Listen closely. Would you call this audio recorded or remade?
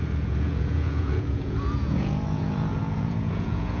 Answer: remade